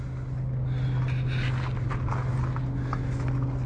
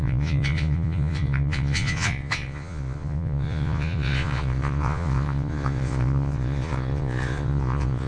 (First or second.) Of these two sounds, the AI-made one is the second